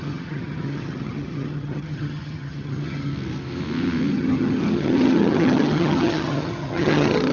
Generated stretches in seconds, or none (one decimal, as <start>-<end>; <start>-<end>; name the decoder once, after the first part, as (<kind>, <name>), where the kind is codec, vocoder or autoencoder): 0.0-3.1 (vocoder, HiFi-GAN); 4.1-7.3